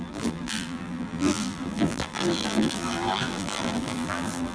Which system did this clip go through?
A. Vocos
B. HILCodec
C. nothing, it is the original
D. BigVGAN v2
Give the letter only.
D